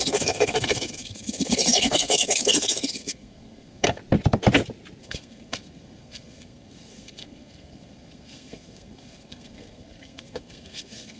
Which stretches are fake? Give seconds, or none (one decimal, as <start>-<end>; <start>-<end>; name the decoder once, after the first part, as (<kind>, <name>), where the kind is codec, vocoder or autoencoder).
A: 0.0-4.0 (codec, SNAC); 5.0-11.2